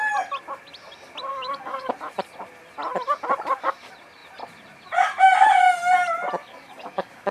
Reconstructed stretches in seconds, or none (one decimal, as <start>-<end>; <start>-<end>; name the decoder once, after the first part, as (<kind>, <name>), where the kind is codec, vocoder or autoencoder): 1.3-1.9 (codec, DAC); 6.4-7.3